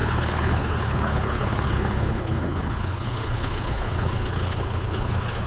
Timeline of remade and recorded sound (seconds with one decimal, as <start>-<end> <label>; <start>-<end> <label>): 0.0-5.5 remade